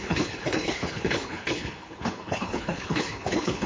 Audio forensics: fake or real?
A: fake